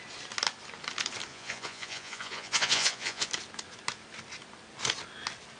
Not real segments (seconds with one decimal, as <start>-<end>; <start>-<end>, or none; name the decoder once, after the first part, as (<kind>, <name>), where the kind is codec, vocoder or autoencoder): 1.3-3.3 (vocoder, Vocos)